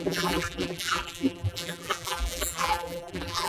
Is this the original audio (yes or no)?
no